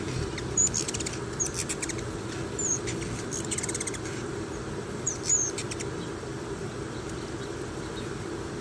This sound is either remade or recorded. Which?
remade